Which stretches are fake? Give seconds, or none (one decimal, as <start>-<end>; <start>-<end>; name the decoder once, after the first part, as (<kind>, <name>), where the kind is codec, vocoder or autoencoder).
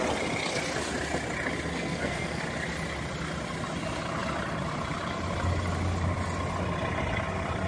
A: 1.7-2.4 (codec, SNAC)